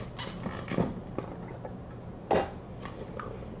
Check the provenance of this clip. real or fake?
real